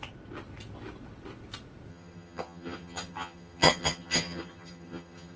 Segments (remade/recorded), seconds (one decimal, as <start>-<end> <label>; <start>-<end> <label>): 0.0-1.9 recorded; 1.9-5.4 remade